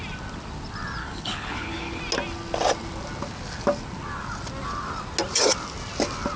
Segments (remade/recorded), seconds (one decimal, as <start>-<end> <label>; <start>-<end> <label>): 0.0-1.0 recorded; 1.0-2.0 remade; 2.0-6.4 recorded